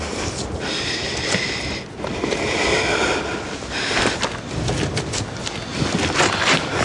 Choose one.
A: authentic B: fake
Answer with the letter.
A